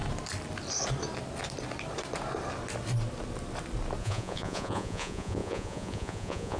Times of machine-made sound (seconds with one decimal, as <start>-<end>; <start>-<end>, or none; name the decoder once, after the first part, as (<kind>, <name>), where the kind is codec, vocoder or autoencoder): 4.0-6.6 (vocoder, Vocos)